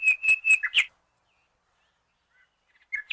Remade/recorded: recorded